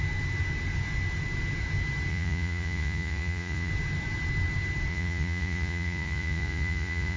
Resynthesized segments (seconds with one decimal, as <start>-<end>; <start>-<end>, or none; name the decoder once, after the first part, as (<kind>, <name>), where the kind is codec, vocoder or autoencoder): 2.1-3.7 (vocoder, Vocos); 4.9-7.2